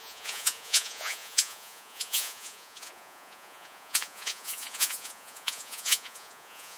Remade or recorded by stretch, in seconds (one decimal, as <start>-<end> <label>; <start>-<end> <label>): 0.0-6.8 remade